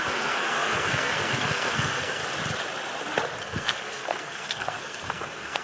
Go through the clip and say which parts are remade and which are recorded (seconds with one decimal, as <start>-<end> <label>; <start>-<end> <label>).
0.0-2.2 remade; 2.2-3.4 recorded; 3.4-5.6 remade